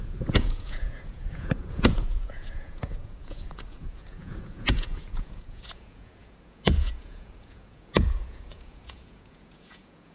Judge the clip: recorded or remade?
remade